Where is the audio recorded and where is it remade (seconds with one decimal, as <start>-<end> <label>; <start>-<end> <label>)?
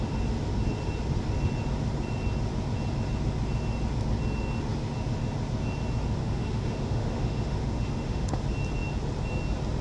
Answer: 0.0-6.2 recorded; 6.2-8.4 remade; 8.4-9.8 recorded